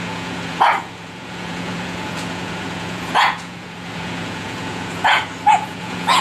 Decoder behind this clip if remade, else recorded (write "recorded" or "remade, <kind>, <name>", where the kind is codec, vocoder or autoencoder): remade, vocoder, Vocos